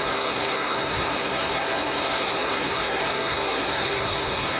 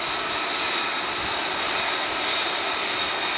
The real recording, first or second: second